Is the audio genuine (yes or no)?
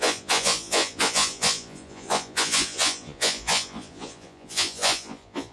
no